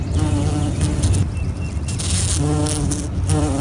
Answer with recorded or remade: recorded